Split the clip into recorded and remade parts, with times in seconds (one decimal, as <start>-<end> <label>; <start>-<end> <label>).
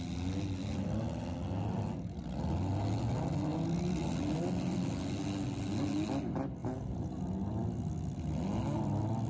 0.0-6.6 recorded; 6.6-7.2 remade; 7.2-9.3 recorded